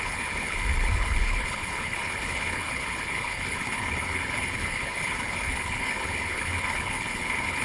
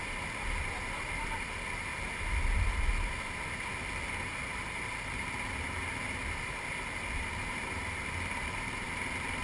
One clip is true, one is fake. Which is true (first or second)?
second